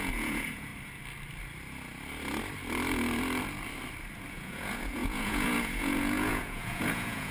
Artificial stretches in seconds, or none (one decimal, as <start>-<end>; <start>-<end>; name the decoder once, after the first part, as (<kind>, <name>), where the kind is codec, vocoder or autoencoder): 0.0-0.7 (vocoder, Vocos); 4.3-7.3